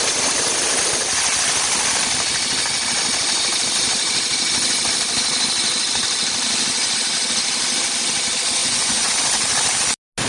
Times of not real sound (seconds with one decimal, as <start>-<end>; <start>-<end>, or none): 8.6-9.1